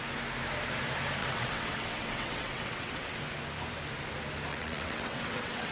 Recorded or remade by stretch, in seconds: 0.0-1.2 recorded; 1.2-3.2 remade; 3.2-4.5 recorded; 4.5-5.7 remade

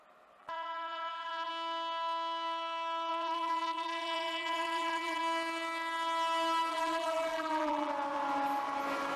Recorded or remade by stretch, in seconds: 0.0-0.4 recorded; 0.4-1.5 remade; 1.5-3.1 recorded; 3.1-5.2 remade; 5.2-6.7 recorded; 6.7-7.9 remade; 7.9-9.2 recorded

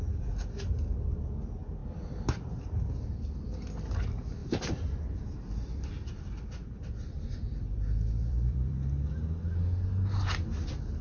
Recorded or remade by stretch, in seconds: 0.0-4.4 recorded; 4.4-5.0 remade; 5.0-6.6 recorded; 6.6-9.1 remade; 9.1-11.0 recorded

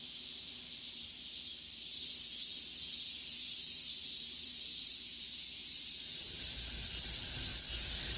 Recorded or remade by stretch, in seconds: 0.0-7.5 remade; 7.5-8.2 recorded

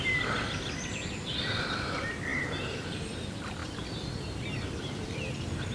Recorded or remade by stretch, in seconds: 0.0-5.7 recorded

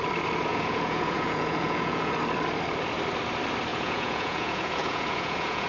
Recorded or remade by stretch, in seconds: 0.0-0.5 recorded; 0.5-2.1 remade; 2.1-3.7 recorded; 3.7-5.7 remade

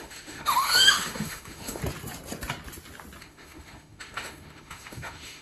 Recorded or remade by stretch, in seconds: 0.0-1.8 remade; 1.8-3.2 recorded; 3.2-5.4 remade

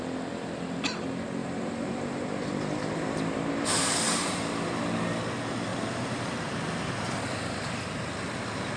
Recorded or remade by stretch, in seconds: 0.0-1.4 recorded; 1.4-5.2 remade; 5.2-5.7 recorded; 5.7-6.3 remade; 6.3-8.8 recorded